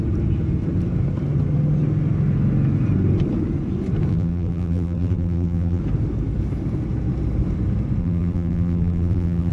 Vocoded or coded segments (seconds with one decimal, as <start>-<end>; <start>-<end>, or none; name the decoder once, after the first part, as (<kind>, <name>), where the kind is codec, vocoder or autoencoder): 4.1-5.8 (vocoder, BigVGAN v2); 8.0-9.5